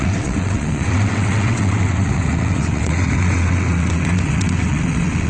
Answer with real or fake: fake